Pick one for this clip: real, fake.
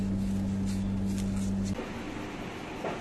real